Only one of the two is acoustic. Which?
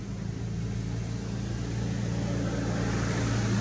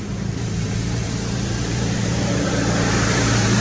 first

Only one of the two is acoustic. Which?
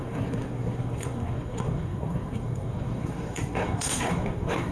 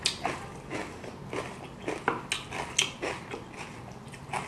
second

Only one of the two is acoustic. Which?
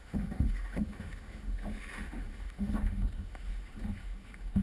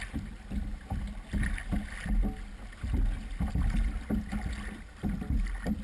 second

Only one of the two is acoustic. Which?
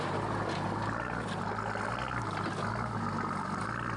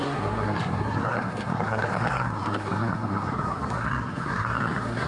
first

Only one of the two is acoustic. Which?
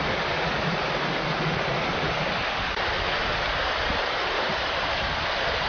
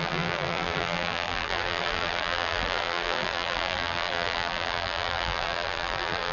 first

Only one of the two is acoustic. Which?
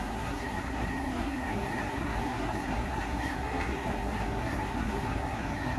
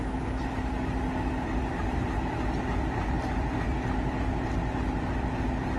second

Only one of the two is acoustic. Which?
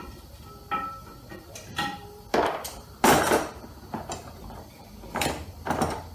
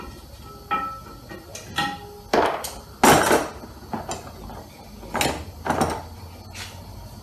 second